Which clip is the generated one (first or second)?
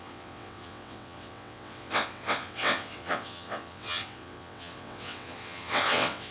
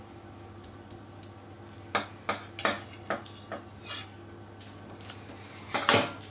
first